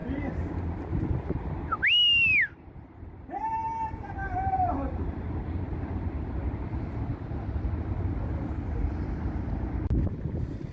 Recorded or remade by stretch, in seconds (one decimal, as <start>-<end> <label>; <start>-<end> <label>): 0.0-4.2 recorded; 4.2-5.3 remade; 5.3-10.7 recorded